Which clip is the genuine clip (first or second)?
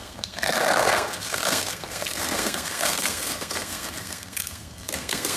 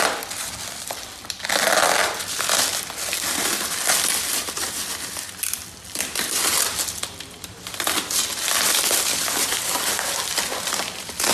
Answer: second